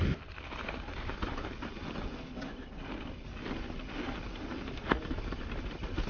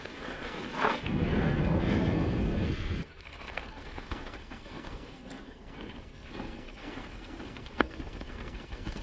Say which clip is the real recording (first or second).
first